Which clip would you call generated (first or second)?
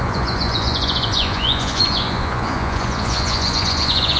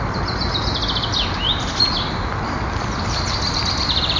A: first